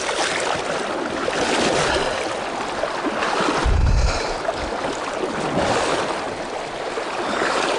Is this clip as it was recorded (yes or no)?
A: yes